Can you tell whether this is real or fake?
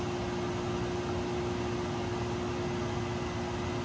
real